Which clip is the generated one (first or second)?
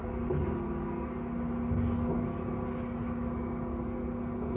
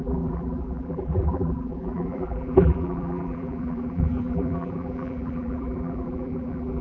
second